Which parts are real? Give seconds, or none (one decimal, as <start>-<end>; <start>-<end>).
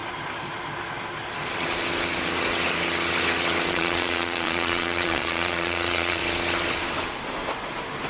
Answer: 0.0-3.7; 6.2-8.1